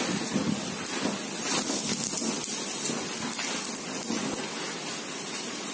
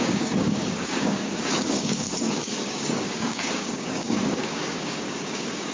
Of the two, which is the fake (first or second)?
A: second